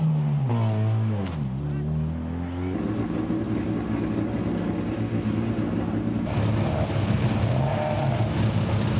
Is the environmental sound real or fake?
real